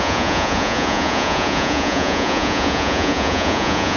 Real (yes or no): no